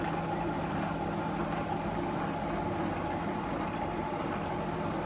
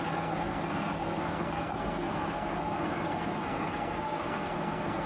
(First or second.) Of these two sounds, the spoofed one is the second